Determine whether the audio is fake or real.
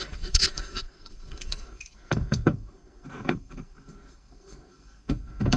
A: fake